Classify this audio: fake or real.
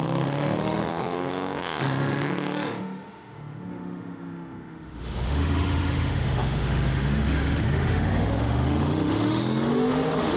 fake